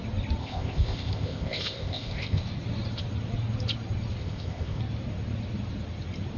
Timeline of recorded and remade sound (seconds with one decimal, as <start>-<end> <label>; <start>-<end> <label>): 0.0-0.4 recorded; 0.4-2.4 remade; 2.4-4.2 recorded; 4.2-4.8 remade; 4.8-6.4 recorded